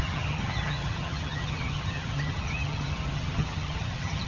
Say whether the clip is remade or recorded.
remade